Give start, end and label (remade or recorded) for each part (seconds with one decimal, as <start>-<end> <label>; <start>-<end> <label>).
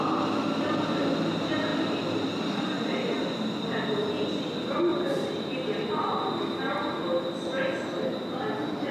0.0-4.9 recorded; 4.9-5.9 remade; 5.9-8.9 recorded